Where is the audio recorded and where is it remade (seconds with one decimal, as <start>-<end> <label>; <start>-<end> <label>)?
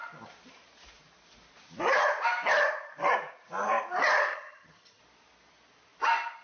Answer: 0.0-4.3 recorded; 4.3-5.0 remade; 5.0-6.4 recorded